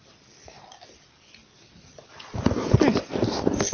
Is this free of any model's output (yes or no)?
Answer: yes